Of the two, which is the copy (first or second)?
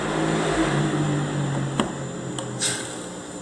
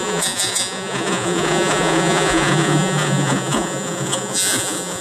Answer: second